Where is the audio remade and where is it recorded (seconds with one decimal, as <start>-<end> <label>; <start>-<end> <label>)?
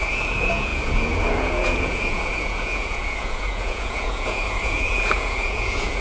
0.0-6.0 remade